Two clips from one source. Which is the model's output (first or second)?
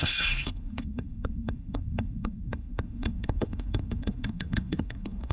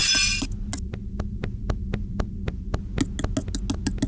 first